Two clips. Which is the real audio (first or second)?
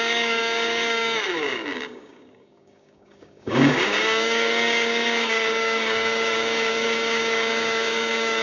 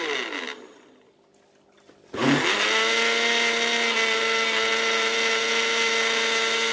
second